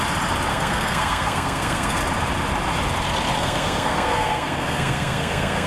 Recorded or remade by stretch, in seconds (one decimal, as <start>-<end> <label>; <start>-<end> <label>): 0.0-0.5 recorded; 0.5-2.0 remade; 2.0-3.4 recorded; 3.4-5.7 remade